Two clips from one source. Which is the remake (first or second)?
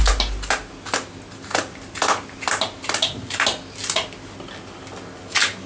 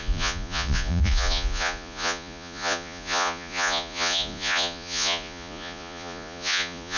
second